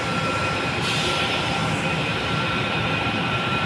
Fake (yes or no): yes